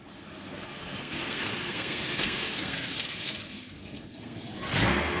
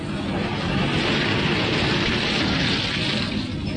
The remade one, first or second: first